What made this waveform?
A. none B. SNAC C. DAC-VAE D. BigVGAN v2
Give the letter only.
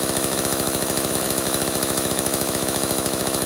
C